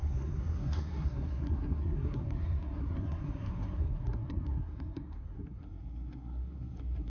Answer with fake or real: fake